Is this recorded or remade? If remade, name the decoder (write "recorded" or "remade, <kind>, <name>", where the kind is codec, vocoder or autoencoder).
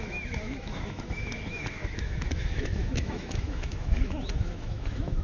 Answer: remade, autoencoder, DAC-VAE